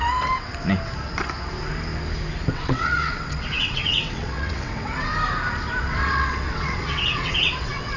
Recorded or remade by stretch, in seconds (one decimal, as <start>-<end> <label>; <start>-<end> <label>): 0.0-0.5 remade; 0.5-2.5 recorded; 2.5-5.1 remade; 5.1-5.8 recorded; 5.8-8.0 remade

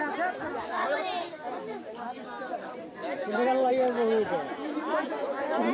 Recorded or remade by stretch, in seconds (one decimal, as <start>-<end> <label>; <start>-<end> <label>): 0.0-5.7 recorded

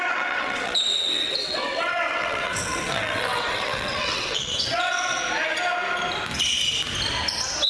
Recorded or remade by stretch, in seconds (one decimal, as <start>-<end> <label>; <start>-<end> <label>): 0.0-5.2 remade; 5.2-7.7 recorded

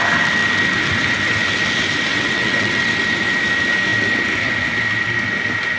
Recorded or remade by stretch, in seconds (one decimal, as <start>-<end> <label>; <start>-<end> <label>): 0.0-2.1 recorded; 2.1-2.9 remade; 2.9-5.8 recorded

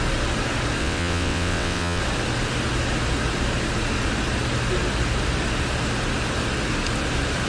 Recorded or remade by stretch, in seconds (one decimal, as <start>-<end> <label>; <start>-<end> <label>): 0.0-0.8 recorded; 0.8-2.0 remade; 2.0-7.5 recorded

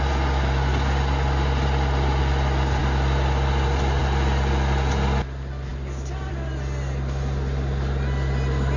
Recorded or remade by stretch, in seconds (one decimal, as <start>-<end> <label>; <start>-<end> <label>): 0.0-8.8 recorded

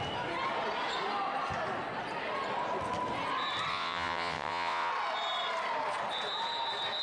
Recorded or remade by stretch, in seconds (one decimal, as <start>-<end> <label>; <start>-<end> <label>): 0.0-3.7 recorded; 3.7-4.9 remade; 4.9-7.0 recorded